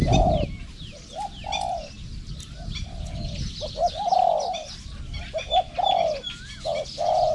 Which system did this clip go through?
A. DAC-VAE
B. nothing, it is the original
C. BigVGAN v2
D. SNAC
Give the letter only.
B